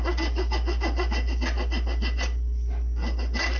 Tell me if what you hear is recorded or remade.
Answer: recorded